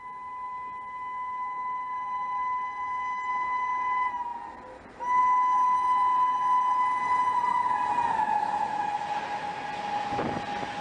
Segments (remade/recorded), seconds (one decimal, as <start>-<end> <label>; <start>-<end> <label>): 0.0-10.8 recorded